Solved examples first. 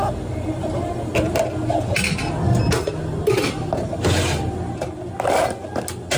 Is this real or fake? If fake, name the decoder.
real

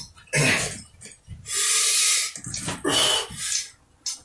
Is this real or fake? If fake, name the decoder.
real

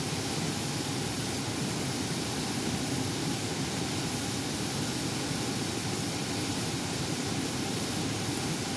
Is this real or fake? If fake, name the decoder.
real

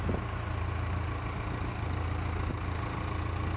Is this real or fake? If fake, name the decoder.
real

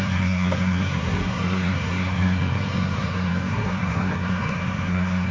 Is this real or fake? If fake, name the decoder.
fake, codec, SNAC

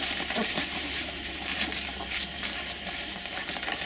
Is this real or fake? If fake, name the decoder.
fake, vocoder, BigVGAN v2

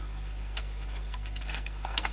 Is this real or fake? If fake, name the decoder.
fake, codec, SNAC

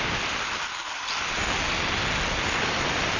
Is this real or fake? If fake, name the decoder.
real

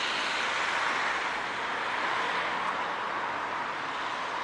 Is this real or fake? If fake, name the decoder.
real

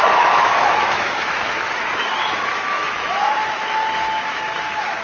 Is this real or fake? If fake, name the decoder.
fake, autoencoder, DAC-VAE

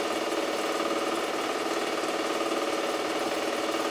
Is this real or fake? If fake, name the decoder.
real